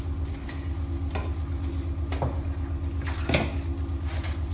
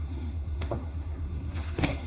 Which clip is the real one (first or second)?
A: first